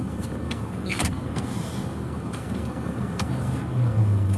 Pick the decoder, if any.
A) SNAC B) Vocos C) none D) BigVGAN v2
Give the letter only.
A